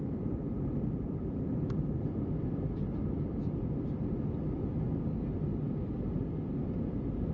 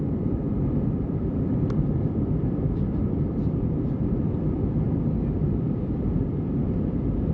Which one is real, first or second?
first